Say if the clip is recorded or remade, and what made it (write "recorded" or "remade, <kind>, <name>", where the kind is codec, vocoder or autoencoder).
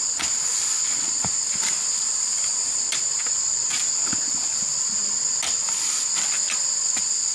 recorded